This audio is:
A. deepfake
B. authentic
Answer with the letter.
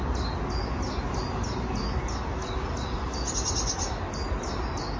B